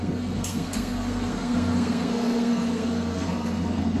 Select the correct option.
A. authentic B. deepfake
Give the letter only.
B